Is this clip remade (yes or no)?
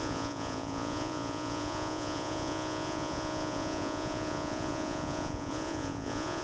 yes